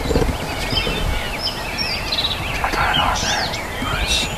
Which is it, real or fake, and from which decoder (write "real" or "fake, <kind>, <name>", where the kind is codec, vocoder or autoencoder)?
real